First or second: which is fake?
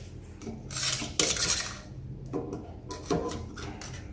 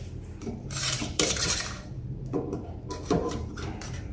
second